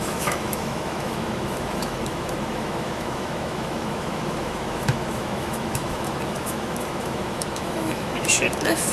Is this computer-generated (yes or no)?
yes